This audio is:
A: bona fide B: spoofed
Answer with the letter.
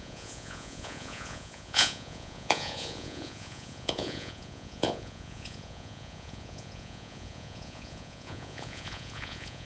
B